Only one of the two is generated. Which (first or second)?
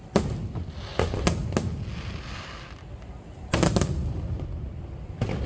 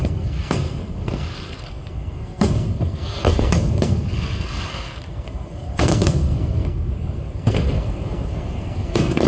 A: second